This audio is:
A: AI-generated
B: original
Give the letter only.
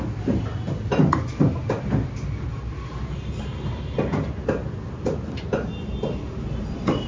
B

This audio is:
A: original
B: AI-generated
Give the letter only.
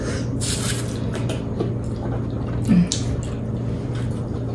A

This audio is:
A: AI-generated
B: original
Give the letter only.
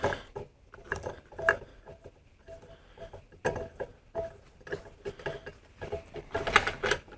B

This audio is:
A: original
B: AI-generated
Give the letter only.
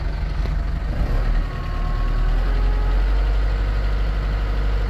A